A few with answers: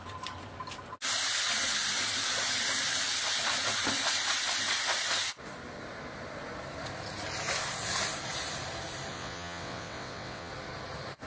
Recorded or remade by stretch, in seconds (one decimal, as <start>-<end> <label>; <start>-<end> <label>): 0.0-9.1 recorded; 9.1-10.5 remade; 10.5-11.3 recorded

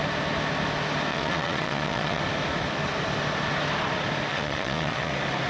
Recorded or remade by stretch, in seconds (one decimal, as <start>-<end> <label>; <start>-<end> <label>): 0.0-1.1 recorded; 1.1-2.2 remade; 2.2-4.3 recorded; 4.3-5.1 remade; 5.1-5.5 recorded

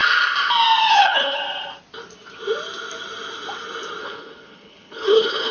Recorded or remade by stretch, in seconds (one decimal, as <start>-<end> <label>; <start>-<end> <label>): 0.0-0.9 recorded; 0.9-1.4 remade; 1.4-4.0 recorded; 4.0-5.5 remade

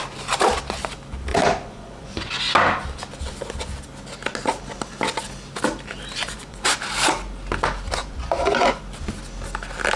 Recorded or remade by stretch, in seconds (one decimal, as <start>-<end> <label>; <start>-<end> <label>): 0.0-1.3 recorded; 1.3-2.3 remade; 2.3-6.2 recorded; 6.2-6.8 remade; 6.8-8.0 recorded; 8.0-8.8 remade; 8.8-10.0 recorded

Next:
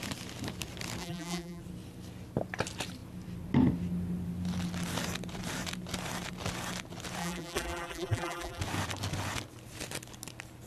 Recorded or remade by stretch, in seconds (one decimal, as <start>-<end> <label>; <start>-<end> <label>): 0.0-1.0 recorded; 1.0-1.6 remade; 1.6-7.2 recorded; 7.2-8.6 remade; 8.6-10.7 recorded